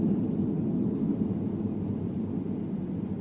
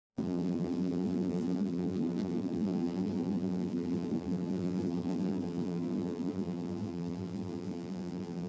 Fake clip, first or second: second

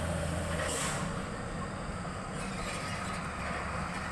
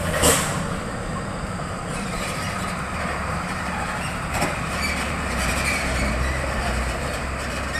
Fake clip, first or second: second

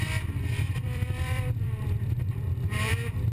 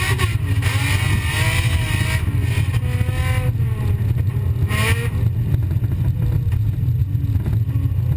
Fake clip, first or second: first